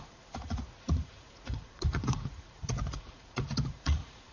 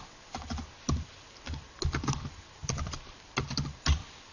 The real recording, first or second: second